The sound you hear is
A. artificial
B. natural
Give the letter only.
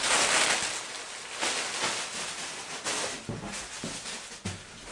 B